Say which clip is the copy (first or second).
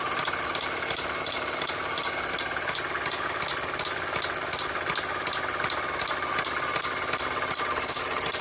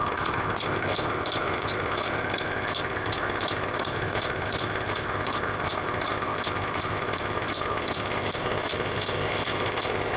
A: second